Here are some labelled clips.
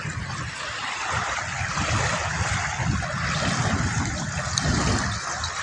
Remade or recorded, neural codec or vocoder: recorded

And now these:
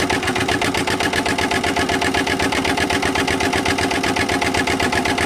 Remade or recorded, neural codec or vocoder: remade, vocoder, BigVGAN v2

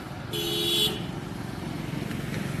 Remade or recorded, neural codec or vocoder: recorded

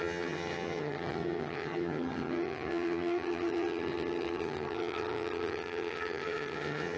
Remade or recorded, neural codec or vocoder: remade, vocoder, HiFi-GAN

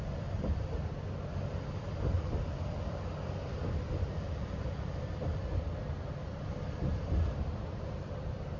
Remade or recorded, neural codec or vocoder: remade, vocoder, BigVGAN v2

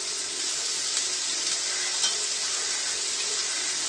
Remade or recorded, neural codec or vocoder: recorded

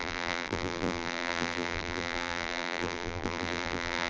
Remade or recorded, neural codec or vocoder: remade, vocoder, BigVGAN v2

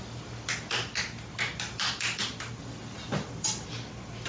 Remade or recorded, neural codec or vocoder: recorded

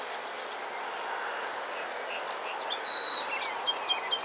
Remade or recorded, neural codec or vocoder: recorded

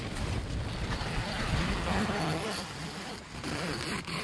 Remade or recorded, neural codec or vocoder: recorded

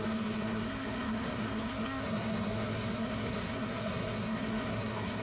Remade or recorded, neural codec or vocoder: remade, codec, SNAC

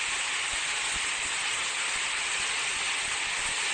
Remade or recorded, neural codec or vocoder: recorded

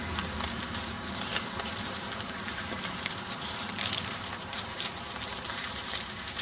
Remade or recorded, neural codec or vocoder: remade, vocoder, BigVGAN v2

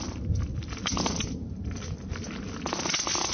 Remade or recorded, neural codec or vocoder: recorded